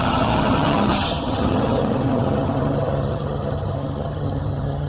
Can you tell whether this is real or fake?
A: fake